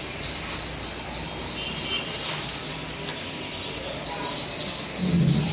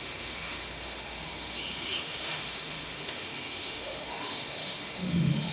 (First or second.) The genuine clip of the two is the first